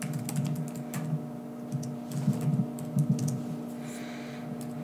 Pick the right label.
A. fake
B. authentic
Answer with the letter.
B